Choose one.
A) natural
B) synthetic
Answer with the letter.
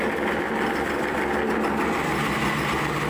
A